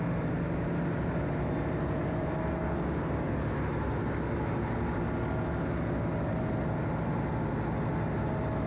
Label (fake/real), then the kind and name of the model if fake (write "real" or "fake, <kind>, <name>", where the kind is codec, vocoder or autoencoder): real